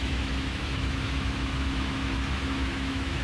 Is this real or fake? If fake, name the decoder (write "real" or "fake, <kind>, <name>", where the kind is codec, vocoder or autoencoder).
fake, autoencoder, DAC-VAE